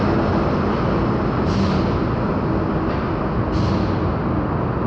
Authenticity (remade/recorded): recorded